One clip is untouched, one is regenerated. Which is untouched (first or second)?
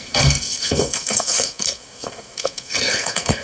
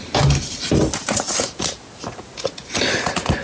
second